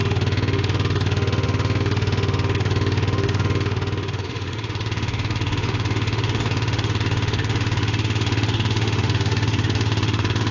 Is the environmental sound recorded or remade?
remade